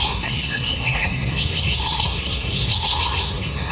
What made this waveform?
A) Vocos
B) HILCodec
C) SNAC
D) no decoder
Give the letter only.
C